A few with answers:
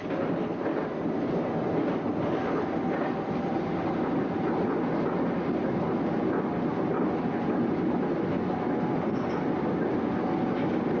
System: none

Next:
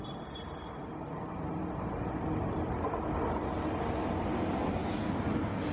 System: none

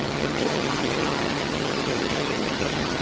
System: vocoder, HiFi-GAN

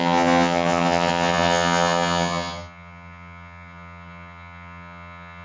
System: vocoder, HiFi-GAN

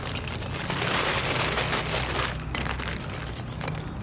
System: none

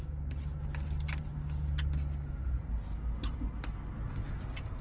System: none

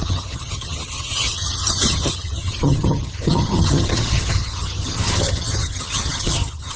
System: vocoder, HiFi-GAN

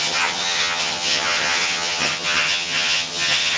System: vocoder, HiFi-GAN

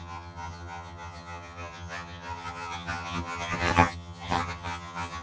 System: vocoder, HiFi-GAN